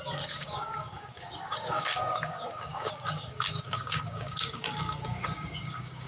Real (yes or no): no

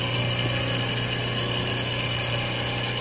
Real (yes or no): yes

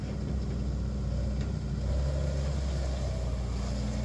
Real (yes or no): yes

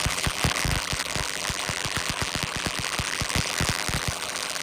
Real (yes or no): no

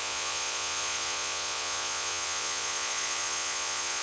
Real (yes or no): no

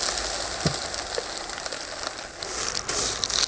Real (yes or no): yes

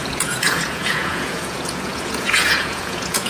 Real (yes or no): no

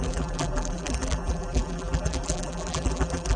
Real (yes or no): no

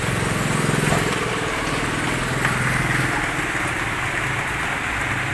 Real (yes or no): yes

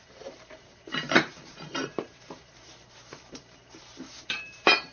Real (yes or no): no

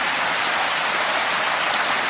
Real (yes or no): yes